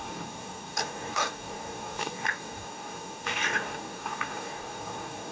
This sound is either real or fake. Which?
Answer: fake